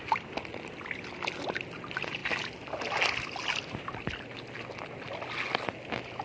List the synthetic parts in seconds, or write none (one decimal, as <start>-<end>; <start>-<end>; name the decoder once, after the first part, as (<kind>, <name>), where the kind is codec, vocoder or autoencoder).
none